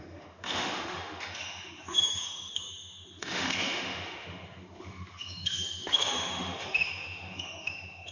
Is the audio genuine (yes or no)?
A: no